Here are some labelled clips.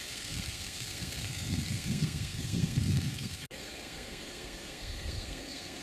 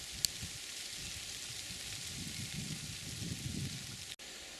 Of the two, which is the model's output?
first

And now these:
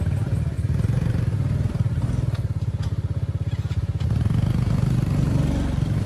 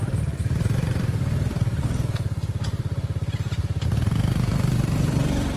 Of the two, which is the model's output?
second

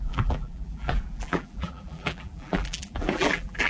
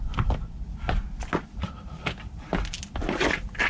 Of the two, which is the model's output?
first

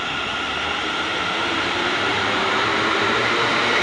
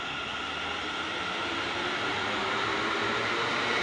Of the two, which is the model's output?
first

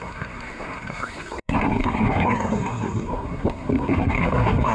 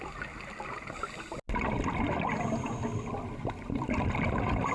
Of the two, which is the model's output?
first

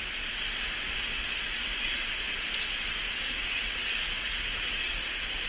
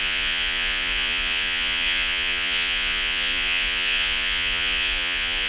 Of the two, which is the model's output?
second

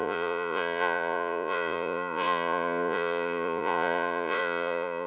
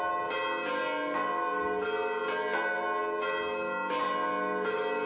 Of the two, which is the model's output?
first